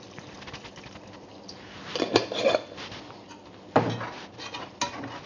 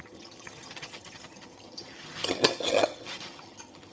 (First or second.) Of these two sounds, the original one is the first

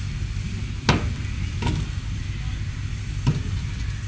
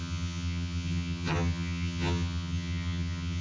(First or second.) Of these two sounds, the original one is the first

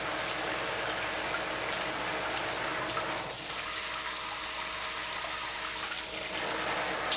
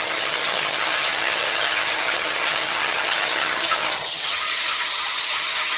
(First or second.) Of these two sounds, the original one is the first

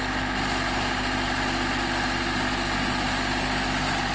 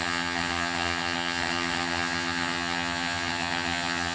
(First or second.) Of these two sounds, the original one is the first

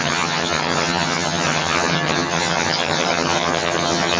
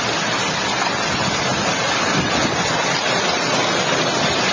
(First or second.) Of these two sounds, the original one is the second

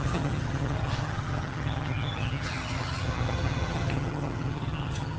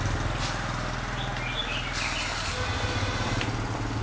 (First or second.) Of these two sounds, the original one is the second